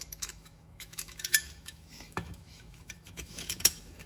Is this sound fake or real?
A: fake